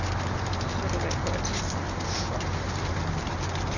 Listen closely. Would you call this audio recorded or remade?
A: recorded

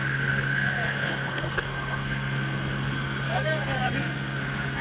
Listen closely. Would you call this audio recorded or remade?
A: remade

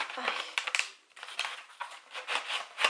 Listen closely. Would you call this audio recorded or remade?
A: recorded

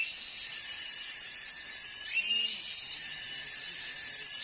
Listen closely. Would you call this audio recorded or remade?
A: recorded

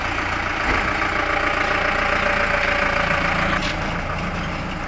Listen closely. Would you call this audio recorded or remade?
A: recorded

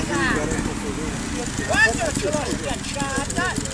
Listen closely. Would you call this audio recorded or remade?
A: recorded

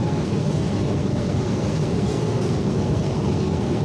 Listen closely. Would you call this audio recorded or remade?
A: remade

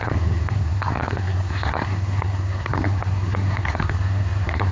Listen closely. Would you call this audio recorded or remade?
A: remade